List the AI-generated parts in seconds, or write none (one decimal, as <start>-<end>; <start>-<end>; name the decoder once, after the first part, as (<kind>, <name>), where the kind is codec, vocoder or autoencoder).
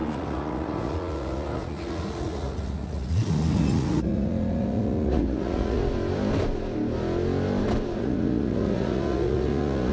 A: 0.0-5.8 (vocoder, Vocos); 8.0-9.9